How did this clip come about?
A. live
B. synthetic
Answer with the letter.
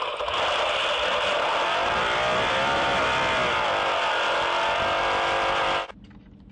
A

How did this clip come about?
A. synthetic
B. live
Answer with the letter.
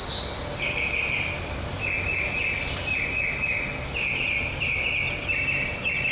B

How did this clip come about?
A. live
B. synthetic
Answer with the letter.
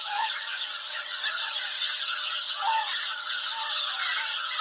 B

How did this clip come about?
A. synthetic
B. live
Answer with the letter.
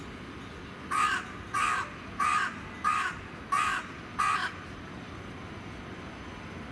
B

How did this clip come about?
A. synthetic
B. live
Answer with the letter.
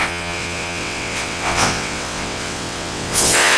A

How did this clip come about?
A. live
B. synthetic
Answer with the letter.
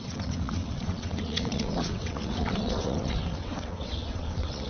B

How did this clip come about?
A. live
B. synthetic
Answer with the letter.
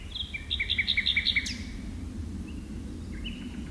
A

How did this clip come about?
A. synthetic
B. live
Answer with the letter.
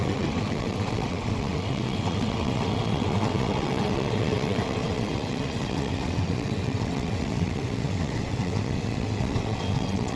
A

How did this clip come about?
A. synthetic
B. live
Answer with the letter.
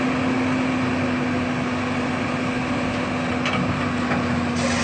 B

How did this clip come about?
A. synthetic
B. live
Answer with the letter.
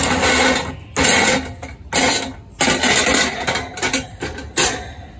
B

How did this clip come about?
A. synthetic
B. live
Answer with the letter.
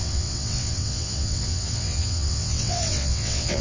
A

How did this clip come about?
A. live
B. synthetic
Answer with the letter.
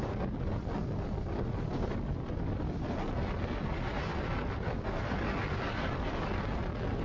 A